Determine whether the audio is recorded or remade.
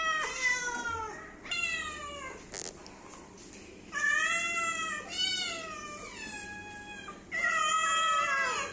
recorded